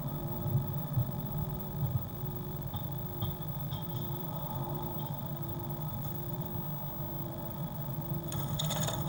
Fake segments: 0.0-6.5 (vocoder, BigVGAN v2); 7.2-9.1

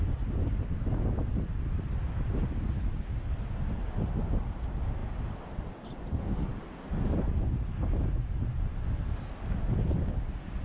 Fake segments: none

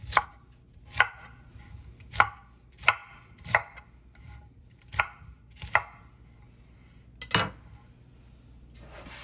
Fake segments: 3.0-5.0 (vocoder, BigVGAN v2)

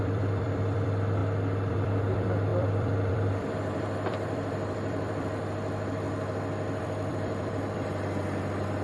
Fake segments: 0.0-1.2 (vocoder, BigVGAN v2); 1.7-5.4; 6.8-8.8

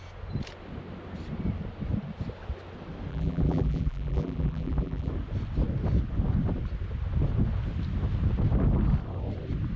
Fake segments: 3.1-5.1 (vocoder, BigVGAN v2)

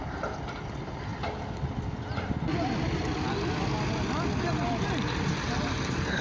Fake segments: 0.0-1.1 (vocoder, BigVGAN v2); 4.8-6.2